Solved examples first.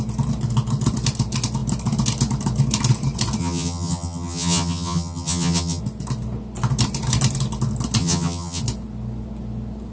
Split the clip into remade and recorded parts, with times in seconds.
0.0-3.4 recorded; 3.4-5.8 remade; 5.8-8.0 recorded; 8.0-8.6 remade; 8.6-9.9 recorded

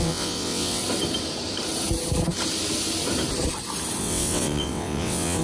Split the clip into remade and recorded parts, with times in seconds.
0.0-0.8 remade; 0.8-4.0 recorded; 4.0-5.4 remade

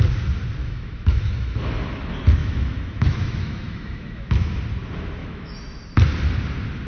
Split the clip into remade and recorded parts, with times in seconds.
0.0-0.6 recorded; 0.6-1.6 remade; 1.6-2.4 recorded; 2.4-4.6 remade; 4.6-5.2 recorded; 5.2-5.8 remade; 5.8-6.9 recorded

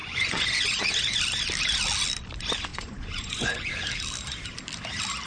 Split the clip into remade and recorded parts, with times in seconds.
0.0-1.0 remade; 1.0-2.7 recorded; 2.7-3.7 remade; 3.7-5.3 recorded

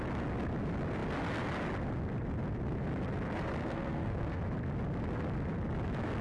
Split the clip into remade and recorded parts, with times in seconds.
0.0-3.6 recorded; 3.6-4.4 remade; 4.4-6.2 recorded

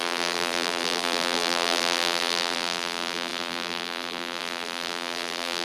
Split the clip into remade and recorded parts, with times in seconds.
0.0-5.6 remade

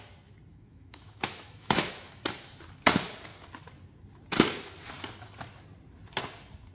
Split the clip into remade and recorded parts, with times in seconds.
0.0-0.5 recorded; 0.5-1.9 remade; 1.9-6.7 recorded

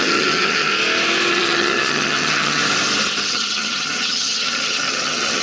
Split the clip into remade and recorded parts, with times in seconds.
0.0-0.7 remade; 0.7-1.3 recorded; 1.3-2.6 remade; 2.6-3.3 recorded; 3.3-5.4 remade